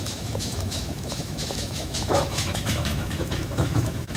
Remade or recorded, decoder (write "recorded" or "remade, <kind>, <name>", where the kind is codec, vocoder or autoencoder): remade, autoencoder, DAC-VAE